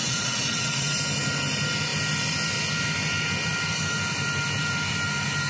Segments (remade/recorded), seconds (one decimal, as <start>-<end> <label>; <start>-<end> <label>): 0.0-0.9 remade; 0.9-5.5 recorded